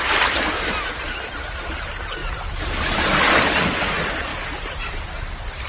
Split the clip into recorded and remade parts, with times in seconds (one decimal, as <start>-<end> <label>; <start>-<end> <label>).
0.0-4.3 recorded; 4.3-5.0 remade; 5.0-5.7 recorded